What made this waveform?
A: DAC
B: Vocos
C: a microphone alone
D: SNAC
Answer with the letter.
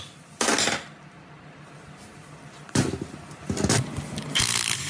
C